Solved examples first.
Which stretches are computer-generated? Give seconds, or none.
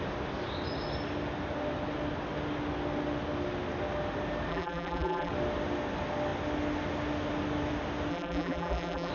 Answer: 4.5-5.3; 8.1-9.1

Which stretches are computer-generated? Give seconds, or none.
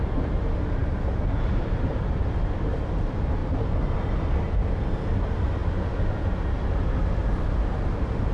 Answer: none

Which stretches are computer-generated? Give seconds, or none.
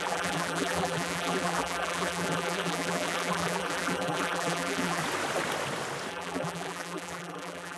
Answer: 0.0-5.0; 6.1-7.8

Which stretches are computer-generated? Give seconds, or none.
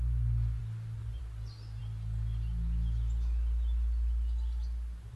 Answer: none